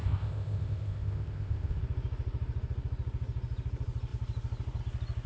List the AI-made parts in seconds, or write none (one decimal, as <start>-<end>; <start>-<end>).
0.0-1.8